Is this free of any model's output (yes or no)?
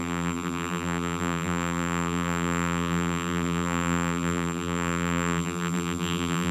no